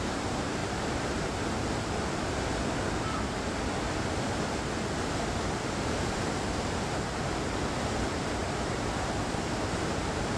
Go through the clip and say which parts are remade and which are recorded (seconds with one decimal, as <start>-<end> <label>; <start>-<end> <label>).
0.0-0.6 remade; 0.6-5.4 recorded; 5.4-10.4 remade